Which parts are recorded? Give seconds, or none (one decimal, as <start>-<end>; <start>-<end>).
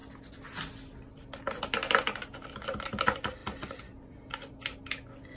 0.0-5.4